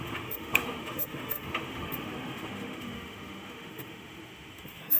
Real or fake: fake